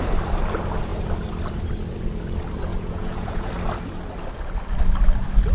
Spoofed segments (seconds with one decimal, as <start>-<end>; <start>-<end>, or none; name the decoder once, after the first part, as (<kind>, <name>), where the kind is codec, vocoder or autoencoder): 2.7-3.5 (vocoder, Vocos)